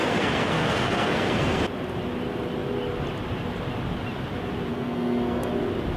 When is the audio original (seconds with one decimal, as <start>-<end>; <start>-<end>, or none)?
1.6-4.7; 5.5-6.0